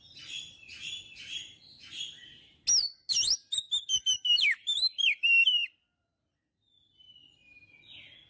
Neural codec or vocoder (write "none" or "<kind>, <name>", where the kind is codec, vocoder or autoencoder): none